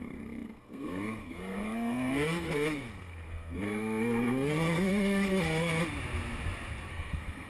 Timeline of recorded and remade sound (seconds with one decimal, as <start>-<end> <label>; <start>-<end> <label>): 0.0-5.8 remade; 5.8-6.9 recorded; 6.9-7.5 remade